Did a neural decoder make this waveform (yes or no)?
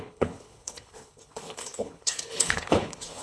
yes